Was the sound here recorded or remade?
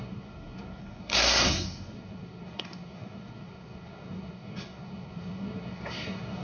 remade